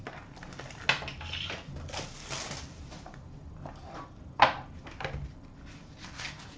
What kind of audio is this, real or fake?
real